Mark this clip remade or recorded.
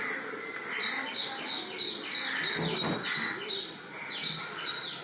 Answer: recorded